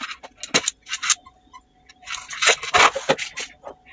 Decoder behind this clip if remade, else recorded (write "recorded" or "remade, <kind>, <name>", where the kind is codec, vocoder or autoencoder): recorded